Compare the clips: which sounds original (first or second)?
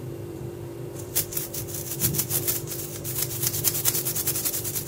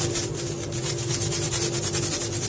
second